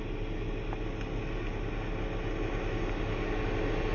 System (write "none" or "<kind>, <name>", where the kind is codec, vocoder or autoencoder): none